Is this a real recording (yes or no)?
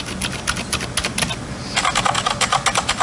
yes